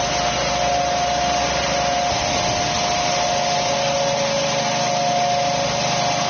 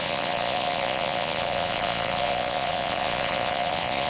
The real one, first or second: first